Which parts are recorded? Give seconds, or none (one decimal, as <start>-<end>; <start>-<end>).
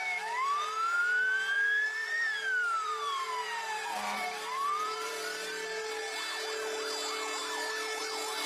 0.0-1.0; 6.0-8.5